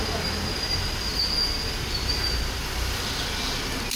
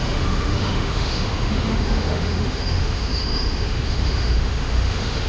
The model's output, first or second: second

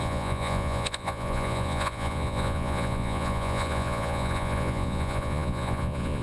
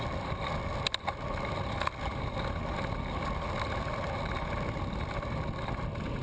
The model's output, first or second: first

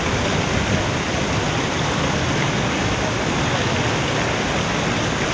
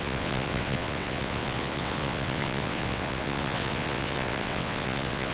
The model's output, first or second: second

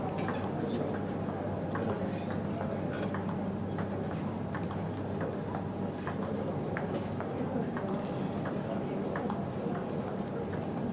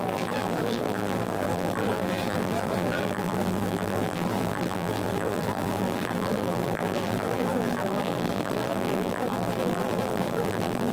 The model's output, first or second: second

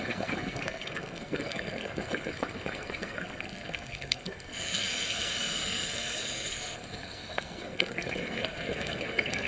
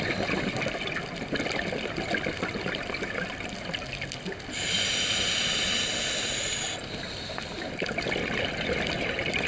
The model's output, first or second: first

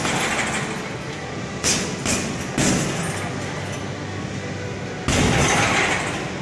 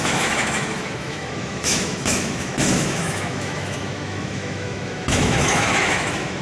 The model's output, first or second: second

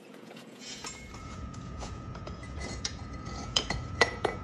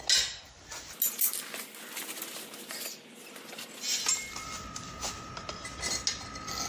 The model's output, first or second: first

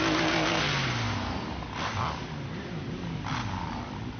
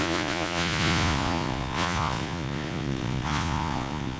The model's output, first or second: second